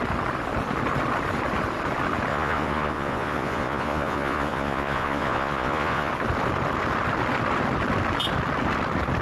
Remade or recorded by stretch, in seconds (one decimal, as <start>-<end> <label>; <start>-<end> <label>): 0.0-2.3 recorded; 2.3-6.1 remade; 6.1-9.2 recorded